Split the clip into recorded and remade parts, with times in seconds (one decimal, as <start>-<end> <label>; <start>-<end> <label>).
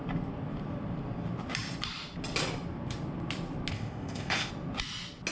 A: 0.0-3.7 recorded; 3.7-4.5 remade; 4.5-5.3 recorded